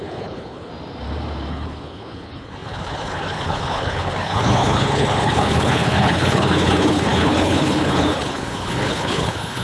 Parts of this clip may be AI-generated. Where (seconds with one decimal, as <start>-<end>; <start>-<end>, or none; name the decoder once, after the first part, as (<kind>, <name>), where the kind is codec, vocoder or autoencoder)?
0.0-0.7 (codec, HILCodec); 1.5-9.6